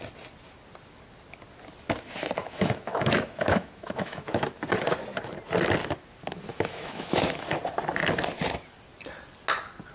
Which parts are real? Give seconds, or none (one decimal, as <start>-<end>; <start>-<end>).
0.0-2.4; 4.5-6.5; 7.6-9.9